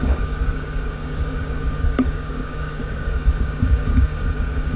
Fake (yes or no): yes